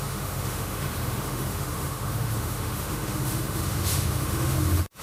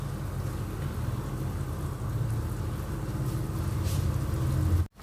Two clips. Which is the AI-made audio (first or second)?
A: first